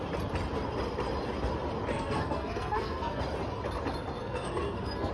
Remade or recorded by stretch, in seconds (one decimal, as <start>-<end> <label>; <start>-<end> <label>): 0.0-1.9 recorded; 1.9-3.2 remade; 3.2-4.2 recorded; 4.2-5.1 remade